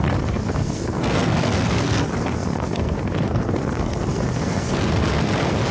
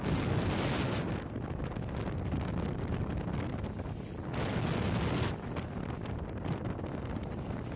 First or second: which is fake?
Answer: first